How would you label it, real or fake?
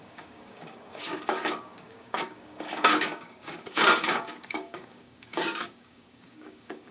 fake